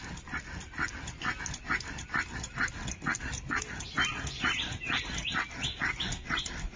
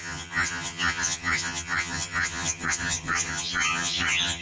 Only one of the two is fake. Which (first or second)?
second